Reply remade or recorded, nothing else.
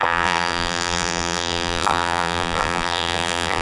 remade